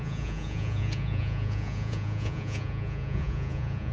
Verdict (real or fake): fake